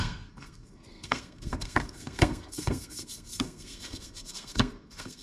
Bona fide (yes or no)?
no